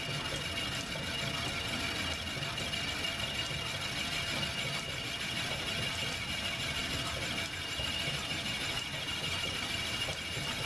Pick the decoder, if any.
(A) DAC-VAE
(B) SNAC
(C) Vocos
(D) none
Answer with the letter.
D